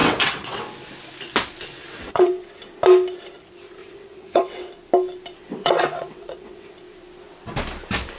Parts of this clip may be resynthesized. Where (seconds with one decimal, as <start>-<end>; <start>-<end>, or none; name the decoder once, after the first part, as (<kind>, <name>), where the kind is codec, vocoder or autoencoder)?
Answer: 0.0-0.6 (vocoder, WaveNeXt); 1.7-2.3; 3.8-4.7; 5.4-6.7